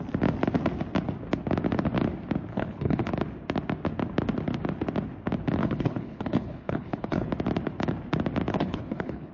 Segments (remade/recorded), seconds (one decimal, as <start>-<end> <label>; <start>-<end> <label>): 0.0-2.5 recorded; 2.5-3.1 remade; 3.1-5.6 recorded; 5.6-7.3 remade; 7.3-8.5 recorded; 8.5-9.3 remade